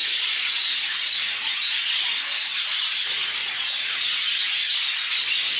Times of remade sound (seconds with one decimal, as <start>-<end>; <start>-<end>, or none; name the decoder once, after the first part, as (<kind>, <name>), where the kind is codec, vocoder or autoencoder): 0.0-2.0 (vocoder, Vocos); 3.4-4.2